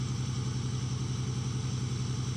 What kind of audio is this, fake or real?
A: real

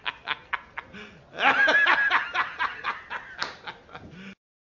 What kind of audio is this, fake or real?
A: real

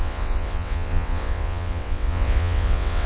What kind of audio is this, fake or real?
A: fake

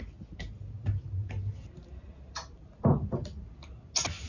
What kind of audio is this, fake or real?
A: real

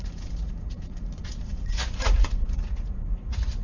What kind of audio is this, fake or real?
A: fake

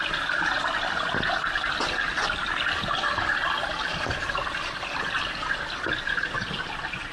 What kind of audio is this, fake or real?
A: real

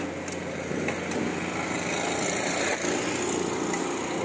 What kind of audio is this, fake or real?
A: real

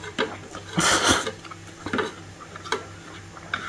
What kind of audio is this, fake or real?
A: real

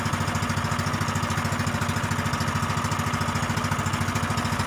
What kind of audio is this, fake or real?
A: real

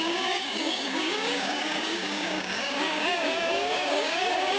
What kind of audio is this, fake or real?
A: fake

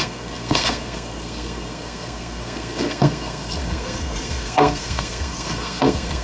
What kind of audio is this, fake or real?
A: fake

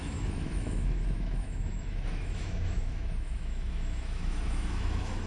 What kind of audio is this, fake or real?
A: fake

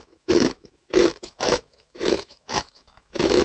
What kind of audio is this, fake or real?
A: fake